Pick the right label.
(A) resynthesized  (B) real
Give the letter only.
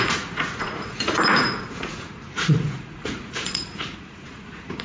A